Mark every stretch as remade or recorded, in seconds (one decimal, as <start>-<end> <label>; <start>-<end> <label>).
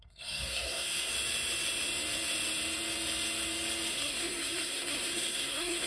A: 0.0-1.1 remade; 1.1-3.9 recorded; 3.9-5.9 remade